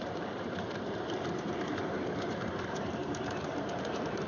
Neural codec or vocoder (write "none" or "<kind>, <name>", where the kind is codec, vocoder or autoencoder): vocoder, BigVGAN v2